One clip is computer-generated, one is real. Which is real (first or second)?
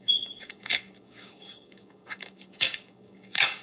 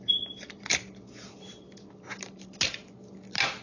second